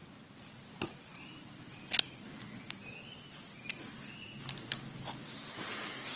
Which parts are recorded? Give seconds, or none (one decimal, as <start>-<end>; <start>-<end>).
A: 0.0-6.2